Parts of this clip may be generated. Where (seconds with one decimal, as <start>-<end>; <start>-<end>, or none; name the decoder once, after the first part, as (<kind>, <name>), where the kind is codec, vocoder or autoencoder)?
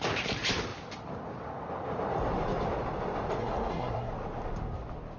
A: 3.4-4.1 (codec, SNAC)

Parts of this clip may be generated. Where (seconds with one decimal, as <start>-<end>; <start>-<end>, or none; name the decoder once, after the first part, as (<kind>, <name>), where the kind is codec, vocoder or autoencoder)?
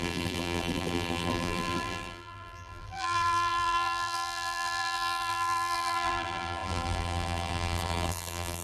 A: 0.0-8.6 (vocoder, BigVGAN v2)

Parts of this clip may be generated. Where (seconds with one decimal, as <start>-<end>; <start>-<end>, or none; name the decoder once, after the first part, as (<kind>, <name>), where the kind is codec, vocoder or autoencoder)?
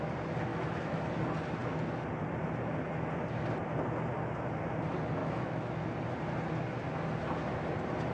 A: 0.5-1.1 (autoencoder, DAC-VAE); 5.2-5.9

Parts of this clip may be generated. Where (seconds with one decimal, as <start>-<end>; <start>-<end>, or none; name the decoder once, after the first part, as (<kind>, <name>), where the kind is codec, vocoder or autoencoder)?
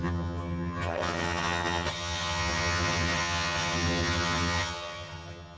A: 0.0-5.6 (vocoder, HiFi-GAN)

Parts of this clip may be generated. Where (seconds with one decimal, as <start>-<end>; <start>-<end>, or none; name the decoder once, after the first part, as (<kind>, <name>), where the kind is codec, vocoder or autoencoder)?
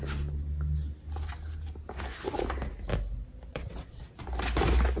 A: 3.5-4.0 (vocoder, WaveNeXt)